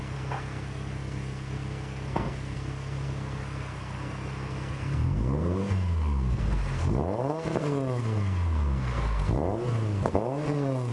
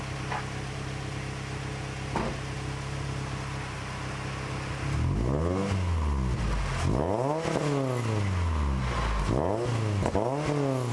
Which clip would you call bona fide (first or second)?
second